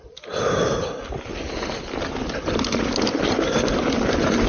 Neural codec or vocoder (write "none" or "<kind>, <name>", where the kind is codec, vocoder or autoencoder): none